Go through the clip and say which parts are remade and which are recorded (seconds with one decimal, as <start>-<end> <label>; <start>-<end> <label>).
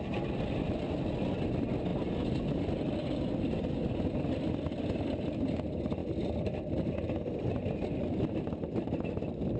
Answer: 0.0-9.6 recorded